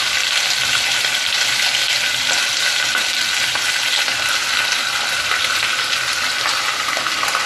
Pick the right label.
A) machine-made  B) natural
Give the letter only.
B